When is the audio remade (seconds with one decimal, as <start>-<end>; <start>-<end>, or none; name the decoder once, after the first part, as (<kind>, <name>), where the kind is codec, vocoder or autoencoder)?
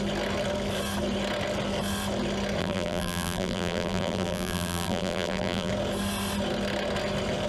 2.6-5.7 (vocoder, BigVGAN v2)